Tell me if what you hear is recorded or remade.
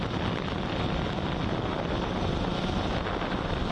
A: recorded